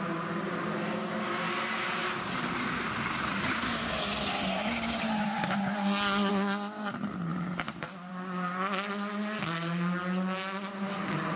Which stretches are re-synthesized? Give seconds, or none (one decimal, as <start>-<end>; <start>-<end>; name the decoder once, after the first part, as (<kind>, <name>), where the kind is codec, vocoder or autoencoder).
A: none